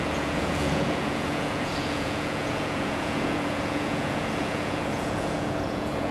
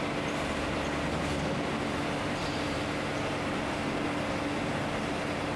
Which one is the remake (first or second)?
first